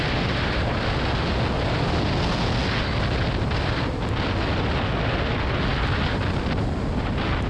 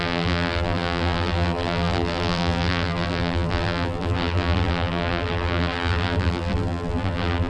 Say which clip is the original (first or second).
first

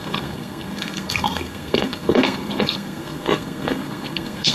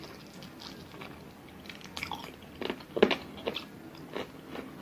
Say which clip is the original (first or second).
second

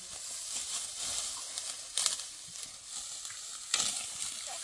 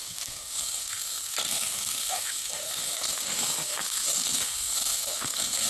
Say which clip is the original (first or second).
first